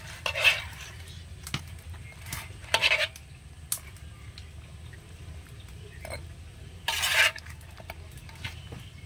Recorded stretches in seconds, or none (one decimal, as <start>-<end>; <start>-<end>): 0.0-9.1